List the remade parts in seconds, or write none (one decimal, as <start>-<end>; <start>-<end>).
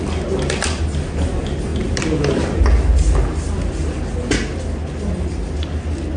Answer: none